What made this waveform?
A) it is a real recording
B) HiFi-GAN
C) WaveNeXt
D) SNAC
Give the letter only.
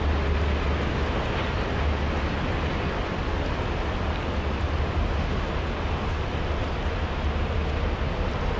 A